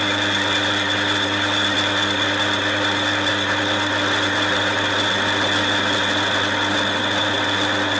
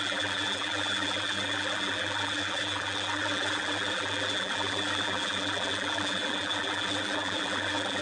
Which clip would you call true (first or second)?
first